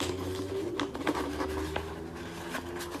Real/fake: real